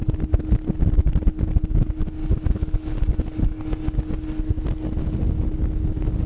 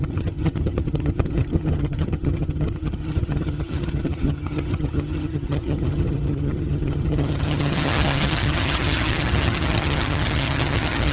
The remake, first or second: second